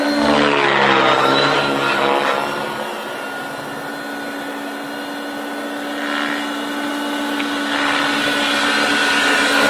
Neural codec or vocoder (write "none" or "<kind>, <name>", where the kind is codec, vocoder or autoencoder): none